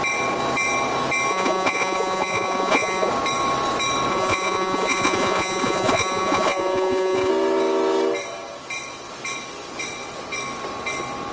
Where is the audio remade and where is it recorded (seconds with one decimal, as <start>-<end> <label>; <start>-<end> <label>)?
0.0-1.3 recorded; 1.3-3.1 remade; 3.1-4.1 recorded; 4.1-7.3 remade; 7.3-11.3 recorded